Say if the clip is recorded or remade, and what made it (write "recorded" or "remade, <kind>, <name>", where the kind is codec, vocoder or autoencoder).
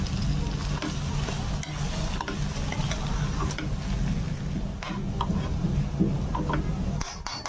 recorded